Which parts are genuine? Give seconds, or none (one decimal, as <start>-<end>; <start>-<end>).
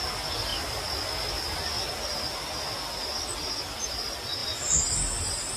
0.0-4.4; 4.9-5.6